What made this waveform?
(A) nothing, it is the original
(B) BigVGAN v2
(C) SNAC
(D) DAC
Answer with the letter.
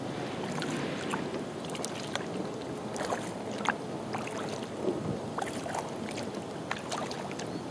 A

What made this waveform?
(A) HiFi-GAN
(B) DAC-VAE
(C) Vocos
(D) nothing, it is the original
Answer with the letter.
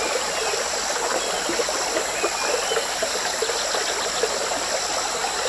D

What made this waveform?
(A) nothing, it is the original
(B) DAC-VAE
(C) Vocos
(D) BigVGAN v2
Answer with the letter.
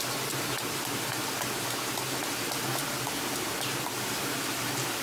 A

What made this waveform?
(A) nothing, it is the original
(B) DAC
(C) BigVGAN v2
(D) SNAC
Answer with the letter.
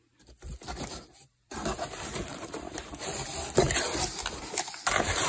C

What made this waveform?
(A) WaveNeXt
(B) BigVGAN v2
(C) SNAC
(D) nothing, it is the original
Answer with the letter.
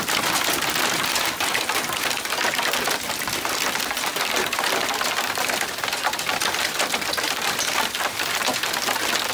D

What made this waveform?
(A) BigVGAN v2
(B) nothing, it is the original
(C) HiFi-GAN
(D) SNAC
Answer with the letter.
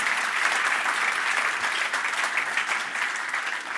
B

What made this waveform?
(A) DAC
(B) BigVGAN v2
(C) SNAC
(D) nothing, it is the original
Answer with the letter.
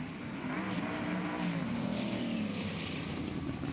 B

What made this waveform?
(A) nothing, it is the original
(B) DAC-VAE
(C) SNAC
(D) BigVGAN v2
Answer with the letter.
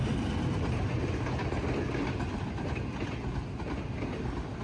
A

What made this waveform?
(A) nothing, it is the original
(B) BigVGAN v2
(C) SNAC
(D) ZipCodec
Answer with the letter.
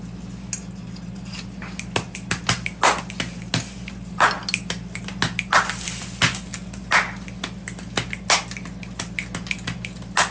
A